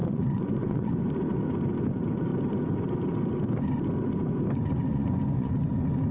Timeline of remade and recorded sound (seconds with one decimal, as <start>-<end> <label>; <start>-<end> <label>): 0.0-0.9 remade; 0.9-4.9 recorded; 4.9-5.5 remade; 5.5-6.1 recorded

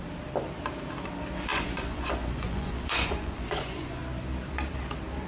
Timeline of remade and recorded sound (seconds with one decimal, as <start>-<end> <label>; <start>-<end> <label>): 0.0-1.5 recorded; 1.5-4.0 remade; 4.0-5.3 recorded

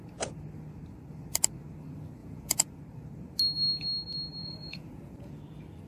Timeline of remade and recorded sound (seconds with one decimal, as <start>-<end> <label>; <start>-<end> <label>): 0.0-2.2 recorded; 2.2-2.7 remade; 2.7-4.4 recorded; 4.4-5.4 remade; 5.4-5.9 recorded